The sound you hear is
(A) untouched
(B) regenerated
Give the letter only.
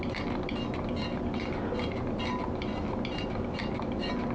A